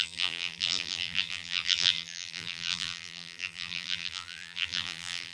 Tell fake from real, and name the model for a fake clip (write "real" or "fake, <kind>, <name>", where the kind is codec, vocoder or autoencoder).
fake, vocoder, BigVGAN v2